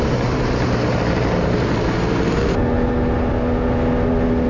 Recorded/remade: recorded